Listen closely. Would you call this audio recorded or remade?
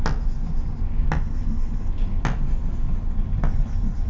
recorded